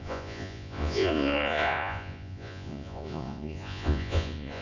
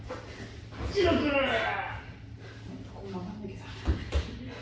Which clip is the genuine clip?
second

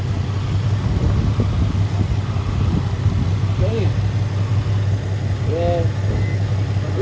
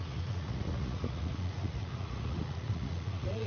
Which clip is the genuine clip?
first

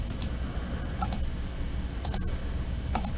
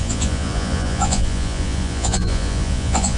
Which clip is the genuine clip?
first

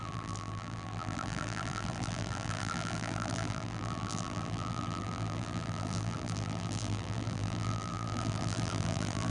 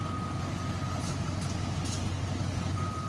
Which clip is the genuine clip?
second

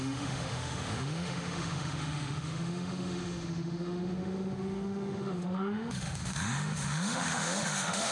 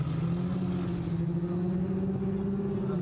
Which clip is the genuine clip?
second